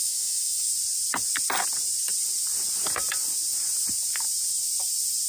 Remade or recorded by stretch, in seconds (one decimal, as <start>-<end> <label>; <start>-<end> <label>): 0.0-0.7 remade; 0.7-5.3 recorded